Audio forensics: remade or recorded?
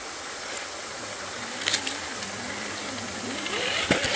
recorded